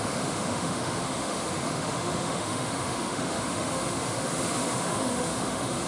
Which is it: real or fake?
fake